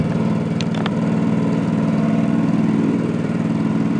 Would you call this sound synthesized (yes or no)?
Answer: yes